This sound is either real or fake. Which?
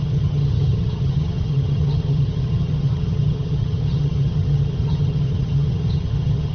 fake